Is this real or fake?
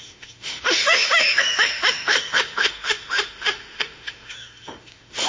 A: fake